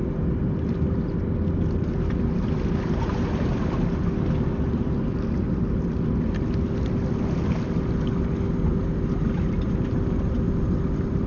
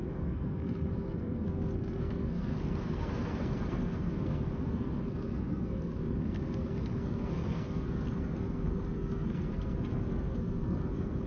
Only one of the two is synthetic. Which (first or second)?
second